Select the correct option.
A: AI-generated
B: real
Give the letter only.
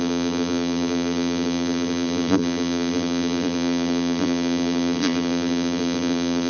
A